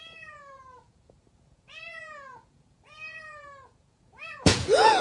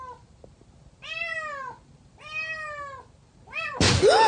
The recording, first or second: second